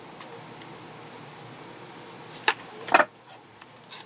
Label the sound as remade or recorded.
recorded